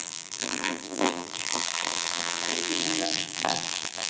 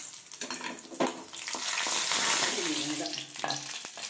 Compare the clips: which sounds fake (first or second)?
first